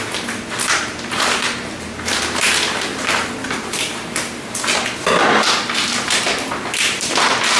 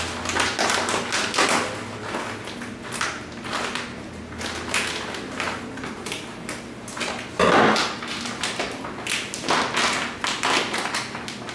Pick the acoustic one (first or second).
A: second